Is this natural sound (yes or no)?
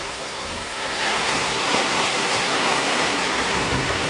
no